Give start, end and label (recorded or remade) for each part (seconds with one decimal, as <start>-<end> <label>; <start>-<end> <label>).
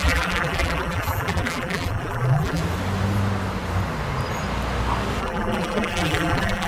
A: 0.0-2.6 remade; 2.6-5.2 recorded; 5.2-6.7 remade